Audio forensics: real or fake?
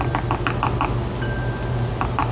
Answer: real